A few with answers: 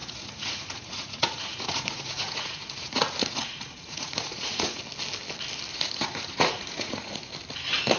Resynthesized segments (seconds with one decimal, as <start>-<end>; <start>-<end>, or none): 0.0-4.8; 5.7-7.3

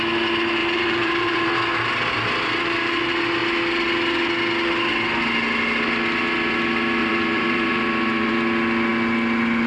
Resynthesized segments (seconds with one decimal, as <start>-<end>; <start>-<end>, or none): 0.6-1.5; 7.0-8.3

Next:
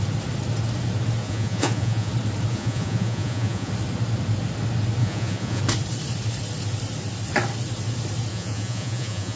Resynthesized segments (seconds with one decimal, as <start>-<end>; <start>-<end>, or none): 1.2-2.1; 2.5-3.7; 5.0-5.6; 8.3-9.4

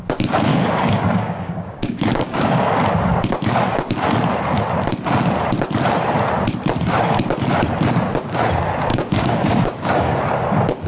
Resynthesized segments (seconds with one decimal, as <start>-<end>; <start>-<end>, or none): 0.5-2.7; 8.9-10.2